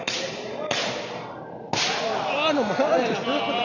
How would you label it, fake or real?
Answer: real